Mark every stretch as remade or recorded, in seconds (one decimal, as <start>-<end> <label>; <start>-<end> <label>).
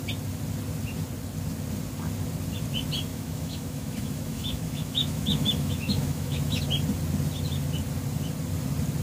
0.0-3.1 recorded; 3.1-6.6 remade; 6.6-9.0 recorded